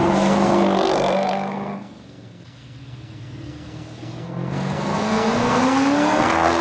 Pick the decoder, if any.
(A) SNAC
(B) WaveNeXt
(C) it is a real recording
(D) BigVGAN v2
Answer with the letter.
A